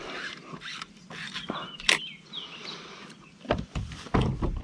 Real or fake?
fake